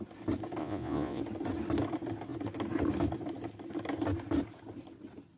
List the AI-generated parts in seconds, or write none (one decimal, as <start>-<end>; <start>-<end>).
0.6-1.2